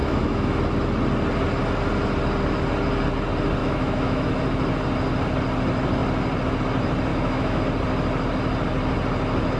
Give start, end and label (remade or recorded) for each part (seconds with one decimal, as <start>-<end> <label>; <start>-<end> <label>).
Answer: 0.0-0.6 remade; 0.6-3.6 recorded; 3.6-4.3 remade; 4.3-7.1 recorded; 7.1-7.6 remade; 7.6-9.6 recorded